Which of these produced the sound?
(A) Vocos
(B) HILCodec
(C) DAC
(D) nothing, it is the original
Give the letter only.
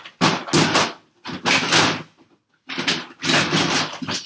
D